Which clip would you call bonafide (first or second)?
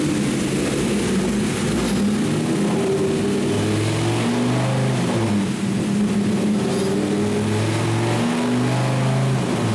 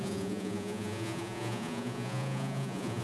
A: first